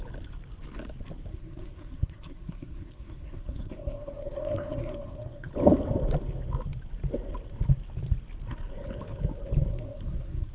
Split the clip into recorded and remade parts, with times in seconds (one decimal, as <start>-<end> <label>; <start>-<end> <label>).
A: 0.0-1.3 recorded; 1.3-5.5 remade; 5.5-9.7 recorded; 9.7-10.5 remade